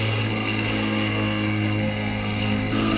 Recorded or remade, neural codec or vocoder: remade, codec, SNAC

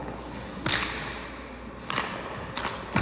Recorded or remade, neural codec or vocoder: recorded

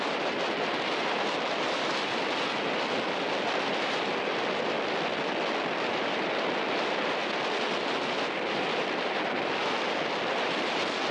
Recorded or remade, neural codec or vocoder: recorded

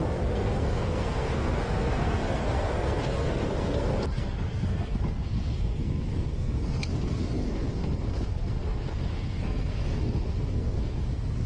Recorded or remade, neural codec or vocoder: remade, codec, SNAC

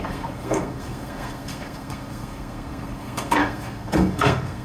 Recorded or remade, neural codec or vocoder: remade, codec, SNAC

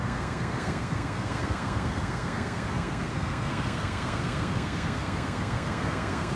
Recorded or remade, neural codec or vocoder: remade, codec, SNAC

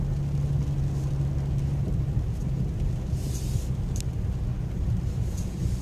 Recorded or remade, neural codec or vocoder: recorded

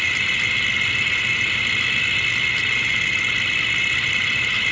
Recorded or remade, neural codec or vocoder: recorded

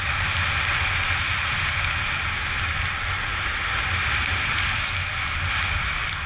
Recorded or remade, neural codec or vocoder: recorded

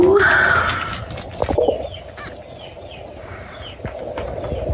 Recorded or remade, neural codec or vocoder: recorded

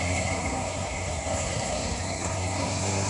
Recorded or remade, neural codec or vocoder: remade, codec, SNAC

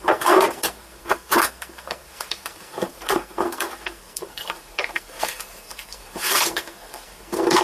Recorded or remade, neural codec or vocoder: remade, codec, SNAC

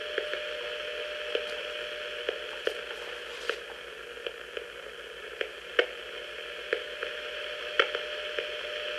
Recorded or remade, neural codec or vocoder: recorded